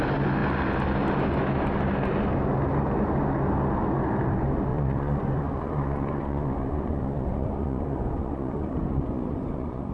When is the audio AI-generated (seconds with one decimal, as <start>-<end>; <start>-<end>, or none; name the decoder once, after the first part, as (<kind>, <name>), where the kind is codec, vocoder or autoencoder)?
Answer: 4.7-9.9 (vocoder, Vocos)